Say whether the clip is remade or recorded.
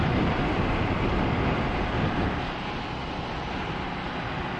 recorded